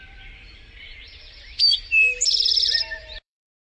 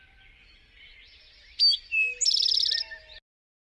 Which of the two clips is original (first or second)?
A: second